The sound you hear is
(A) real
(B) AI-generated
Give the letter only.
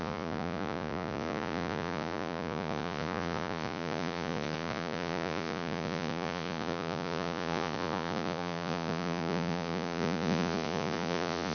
B